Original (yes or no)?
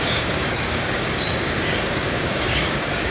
no